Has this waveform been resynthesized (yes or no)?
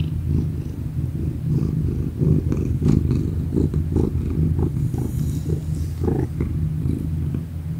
no